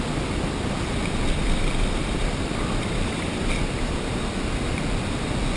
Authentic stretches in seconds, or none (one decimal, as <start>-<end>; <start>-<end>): 0.0-1.0; 3.9-5.6